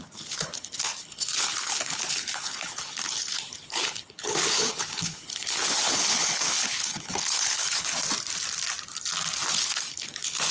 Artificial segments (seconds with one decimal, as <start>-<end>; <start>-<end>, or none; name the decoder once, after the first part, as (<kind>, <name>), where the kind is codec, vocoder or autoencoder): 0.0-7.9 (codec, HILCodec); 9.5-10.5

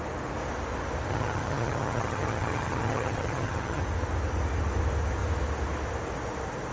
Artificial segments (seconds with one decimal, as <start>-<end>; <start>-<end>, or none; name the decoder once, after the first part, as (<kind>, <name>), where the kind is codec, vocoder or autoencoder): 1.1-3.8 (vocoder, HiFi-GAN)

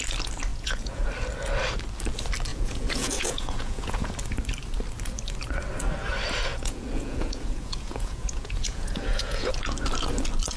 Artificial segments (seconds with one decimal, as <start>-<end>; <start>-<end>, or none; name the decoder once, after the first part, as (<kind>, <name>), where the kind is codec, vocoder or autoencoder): 0.5-1.1 (vocoder, Vocos); 2.5-4.1; 6.5-9.5

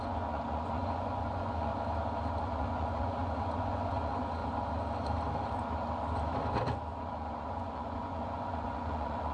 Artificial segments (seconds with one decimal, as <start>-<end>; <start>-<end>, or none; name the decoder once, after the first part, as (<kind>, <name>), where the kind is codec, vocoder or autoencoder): 0.0-1.7 (vocoder, Vocos); 2.4-4.4; 7.0-9.3

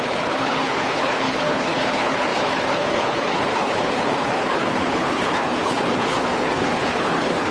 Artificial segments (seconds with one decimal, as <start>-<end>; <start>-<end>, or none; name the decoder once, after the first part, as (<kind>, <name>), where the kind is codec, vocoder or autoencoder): 0.0-7.5 (codec, HILCodec)

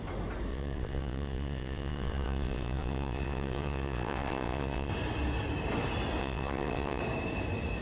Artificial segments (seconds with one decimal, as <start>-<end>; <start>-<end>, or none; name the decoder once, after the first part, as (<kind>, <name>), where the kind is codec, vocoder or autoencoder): 0.5-4.9 (vocoder, WaveNeXt); 6.2-7.0